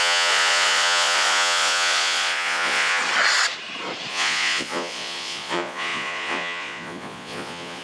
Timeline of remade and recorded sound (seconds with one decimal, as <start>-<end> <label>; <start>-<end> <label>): 0.0-3.0 remade; 3.0-4.1 recorded; 4.1-7.8 remade

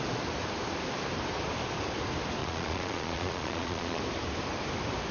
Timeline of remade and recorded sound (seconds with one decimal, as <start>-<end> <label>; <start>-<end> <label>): 0.0-2.4 recorded; 2.4-4.0 remade; 4.0-5.1 recorded

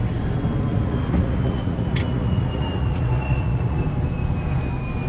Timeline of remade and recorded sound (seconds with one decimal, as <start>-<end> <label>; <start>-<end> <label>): 0.0-0.7 recorded; 0.7-3.8 remade; 3.8-5.1 recorded

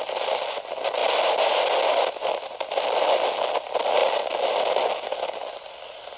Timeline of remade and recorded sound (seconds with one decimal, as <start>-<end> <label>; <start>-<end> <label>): 0.0-6.2 recorded

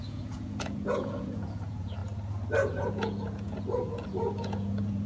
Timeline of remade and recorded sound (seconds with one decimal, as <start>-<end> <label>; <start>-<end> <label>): 0.0-2.0 remade; 2.0-2.9 recorded; 2.9-5.1 remade

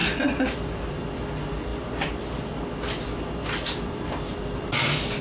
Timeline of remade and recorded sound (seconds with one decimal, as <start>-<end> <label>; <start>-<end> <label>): 0.0-5.2 recorded

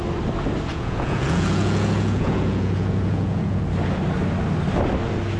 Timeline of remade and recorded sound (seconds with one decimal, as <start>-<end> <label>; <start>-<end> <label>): 0.0-0.7 recorded; 0.7-3.6 remade; 3.6-5.4 recorded